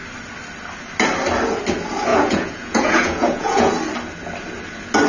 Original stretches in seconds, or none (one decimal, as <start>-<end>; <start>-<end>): 0.0-2.1; 3.7-5.1